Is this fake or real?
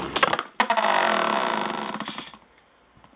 real